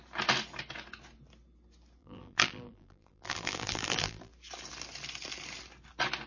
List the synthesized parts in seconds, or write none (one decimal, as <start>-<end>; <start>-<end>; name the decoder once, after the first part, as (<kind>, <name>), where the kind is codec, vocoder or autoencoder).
2.0-4.3 (vocoder, BigVGAN v2)